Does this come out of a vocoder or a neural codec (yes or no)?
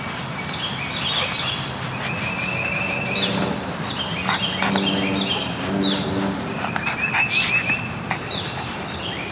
no